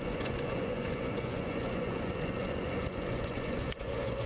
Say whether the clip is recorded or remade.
remade